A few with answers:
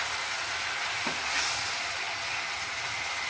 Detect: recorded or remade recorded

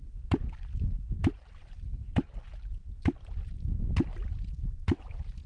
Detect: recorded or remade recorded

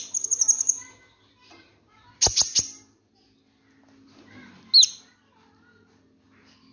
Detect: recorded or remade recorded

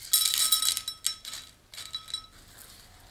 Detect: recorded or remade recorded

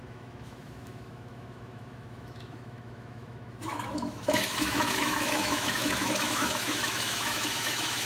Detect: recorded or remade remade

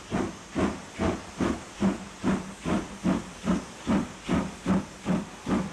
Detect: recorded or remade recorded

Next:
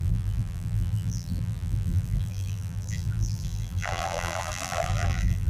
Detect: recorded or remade remade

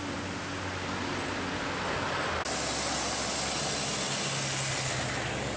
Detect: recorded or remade recorded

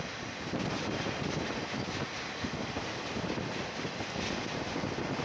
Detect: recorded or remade recorded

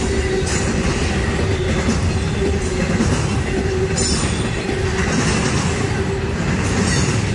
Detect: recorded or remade recorded